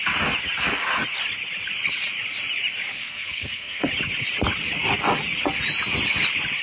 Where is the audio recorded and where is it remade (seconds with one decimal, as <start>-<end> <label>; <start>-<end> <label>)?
0.0-2.9 recorded; 2.9-3.9 remade; 3.9-6.6 recorded